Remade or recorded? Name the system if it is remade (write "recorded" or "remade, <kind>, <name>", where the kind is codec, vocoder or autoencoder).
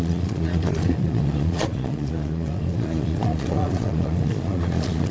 remade, vocoder, Vocos